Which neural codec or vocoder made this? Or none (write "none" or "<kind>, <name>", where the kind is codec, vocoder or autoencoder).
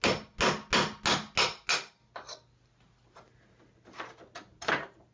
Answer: none